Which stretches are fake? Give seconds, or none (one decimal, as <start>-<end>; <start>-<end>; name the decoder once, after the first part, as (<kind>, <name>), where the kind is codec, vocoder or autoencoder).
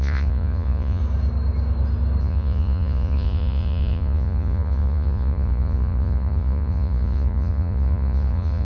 0.0-1.0 (vocoder, Vocos); 2.2-8.6